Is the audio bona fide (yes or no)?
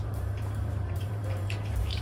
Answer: no